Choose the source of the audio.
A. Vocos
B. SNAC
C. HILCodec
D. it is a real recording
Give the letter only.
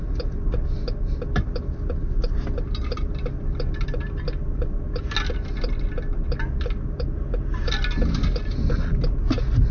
D